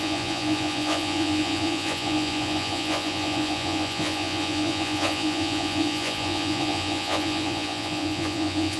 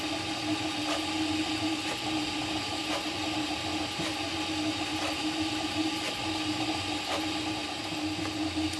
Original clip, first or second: second